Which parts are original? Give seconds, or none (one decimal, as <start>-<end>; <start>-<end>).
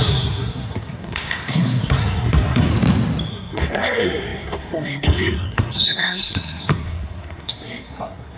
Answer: 2.7-3.3